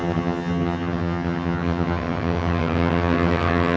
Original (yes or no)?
no